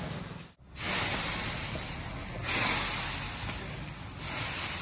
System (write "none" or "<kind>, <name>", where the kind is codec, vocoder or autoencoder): none